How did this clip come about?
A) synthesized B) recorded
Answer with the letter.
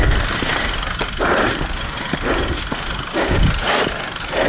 B